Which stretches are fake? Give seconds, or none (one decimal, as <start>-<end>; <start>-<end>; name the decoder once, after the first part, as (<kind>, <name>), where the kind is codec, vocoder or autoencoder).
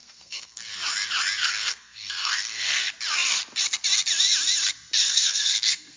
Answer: 0.0-0.6 (codec, SNAC); 1.4-2.8; 5.0-6.0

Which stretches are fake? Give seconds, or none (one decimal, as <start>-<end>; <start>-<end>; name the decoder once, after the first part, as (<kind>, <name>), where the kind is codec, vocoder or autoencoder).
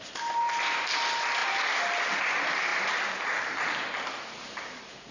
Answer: 0.0-1.4 (vocoder, BigVGAN v2); 2.0-2.7; 4.4-5.1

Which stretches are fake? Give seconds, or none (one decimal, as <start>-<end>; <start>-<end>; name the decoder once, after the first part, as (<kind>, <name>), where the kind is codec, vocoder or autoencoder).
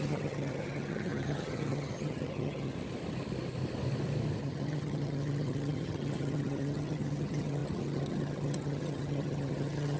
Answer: 0.0-2.7 (vocoder, HiFi-GAN); 4.4-10.0